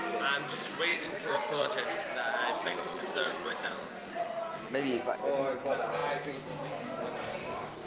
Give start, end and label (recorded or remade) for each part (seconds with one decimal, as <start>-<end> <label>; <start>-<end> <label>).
0.0-0.9 recorded; 0.9-1.7 remade; 1.7-2.6 recorded; 2.6-4.3 remade; 4.3-7.9 recorded